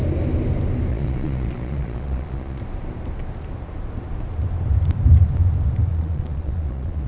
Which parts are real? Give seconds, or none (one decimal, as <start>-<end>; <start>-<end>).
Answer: 0.0-0.9; 2.6-5.9